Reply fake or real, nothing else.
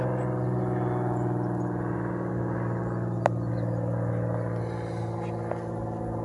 real